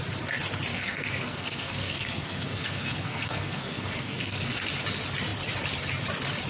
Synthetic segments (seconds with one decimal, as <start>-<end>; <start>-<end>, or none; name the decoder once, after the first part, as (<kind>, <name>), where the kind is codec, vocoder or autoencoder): 0.7-4.6 (codec, SNAC)